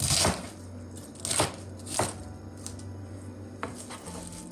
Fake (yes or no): no